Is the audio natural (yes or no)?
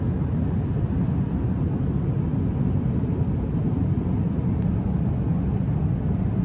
yes